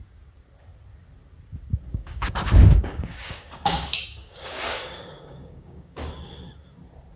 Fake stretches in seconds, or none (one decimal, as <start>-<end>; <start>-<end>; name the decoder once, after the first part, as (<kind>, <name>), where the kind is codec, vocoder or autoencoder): 1.9-6.0 (codec, DAC)